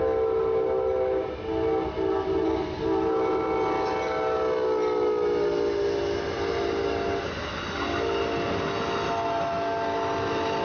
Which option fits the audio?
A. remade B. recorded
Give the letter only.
B